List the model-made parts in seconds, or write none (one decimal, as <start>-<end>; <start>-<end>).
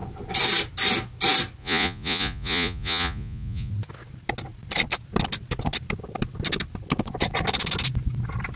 1.6-3.7